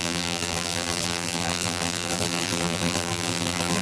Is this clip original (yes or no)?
no